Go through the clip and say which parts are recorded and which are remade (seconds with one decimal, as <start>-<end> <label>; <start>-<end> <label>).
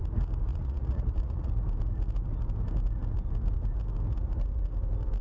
0.0-0.5 recorded; 0.5-1.5 remade; 1.5-5.2 recorded